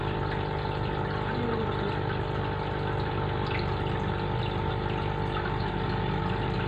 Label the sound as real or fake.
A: real